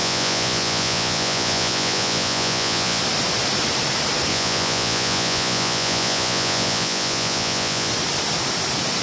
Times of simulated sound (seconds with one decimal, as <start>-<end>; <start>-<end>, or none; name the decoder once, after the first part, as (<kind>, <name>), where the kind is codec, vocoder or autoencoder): 0.0-3.0 (vocoder, Vocos); 4.3-7.9